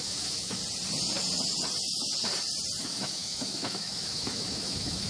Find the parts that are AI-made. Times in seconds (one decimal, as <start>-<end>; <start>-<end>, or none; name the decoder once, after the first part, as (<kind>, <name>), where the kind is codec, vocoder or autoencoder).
0.0-0.6 (autoencoder, DAC-VAE); 2.8-5.1

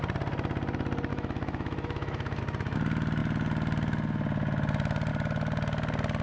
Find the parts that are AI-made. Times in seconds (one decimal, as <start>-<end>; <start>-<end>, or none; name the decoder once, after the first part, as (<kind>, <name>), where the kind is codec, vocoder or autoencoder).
1.1-2.4 (autoencoder, DAC-VAE)

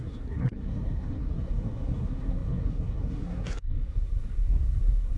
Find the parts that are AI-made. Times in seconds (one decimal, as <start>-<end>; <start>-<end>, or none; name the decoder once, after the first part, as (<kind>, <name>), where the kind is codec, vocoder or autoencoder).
0.0-5.2 (codec, SNAC)

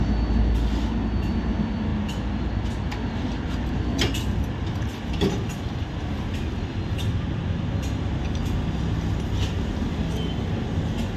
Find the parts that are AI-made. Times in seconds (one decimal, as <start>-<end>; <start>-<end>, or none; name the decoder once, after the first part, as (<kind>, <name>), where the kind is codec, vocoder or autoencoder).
none